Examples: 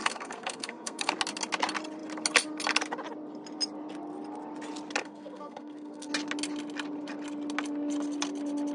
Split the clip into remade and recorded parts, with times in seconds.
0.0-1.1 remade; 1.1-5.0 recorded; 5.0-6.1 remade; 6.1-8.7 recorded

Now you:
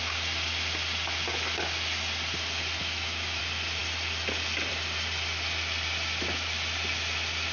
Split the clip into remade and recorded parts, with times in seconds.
0.0-2.8 recorded; 2.8-3.4 remade; 3.4-7.5 recorded

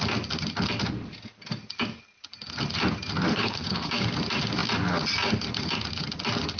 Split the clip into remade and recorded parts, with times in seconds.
0.0-3.3 recorded; 3.3-3.9 remade; 3.9-6.6 recorded

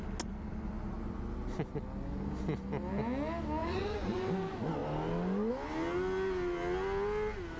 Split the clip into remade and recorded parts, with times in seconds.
0.0-3.6 recorded; 3.6-4.3 remade; 4.3-7.6 recorded

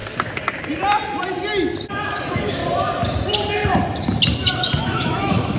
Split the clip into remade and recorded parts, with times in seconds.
0.0-1.9 recorded; 1.9-2.6 remade; 2.6-4.8 recorded; 4.8-5.6 remade

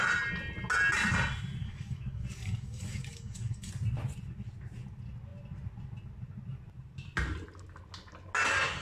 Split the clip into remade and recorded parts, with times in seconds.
0.0-1.6 recorded; 1.6-3.7 remade; 3.7-8.8 recorded

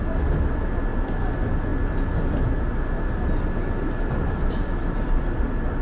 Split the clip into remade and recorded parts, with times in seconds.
0.0-5.8 recorded